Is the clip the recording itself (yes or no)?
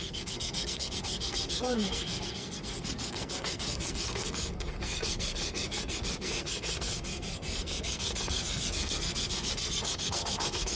no